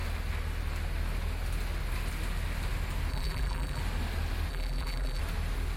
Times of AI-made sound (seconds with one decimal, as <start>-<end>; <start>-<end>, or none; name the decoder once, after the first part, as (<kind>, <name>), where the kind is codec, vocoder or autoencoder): 3.1-3.8 (vocoder, BigVGAN v2); 4.5-5.2